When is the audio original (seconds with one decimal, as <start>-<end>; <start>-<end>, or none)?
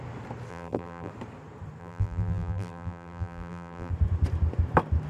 0.0-0.5; 1.1-1.8; 3.9-5.1